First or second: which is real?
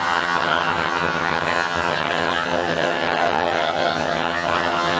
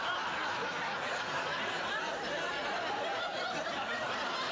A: second